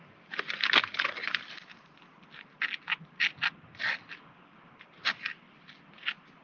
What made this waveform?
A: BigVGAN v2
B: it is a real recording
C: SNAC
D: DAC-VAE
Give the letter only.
B